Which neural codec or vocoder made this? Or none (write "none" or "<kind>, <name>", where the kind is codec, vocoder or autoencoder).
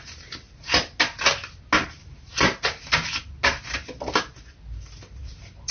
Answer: none